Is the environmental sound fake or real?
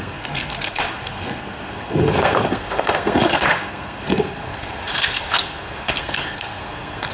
fake